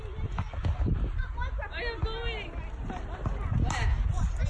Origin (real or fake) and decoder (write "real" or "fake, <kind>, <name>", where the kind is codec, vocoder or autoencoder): real